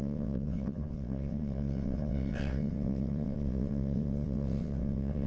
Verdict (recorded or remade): remade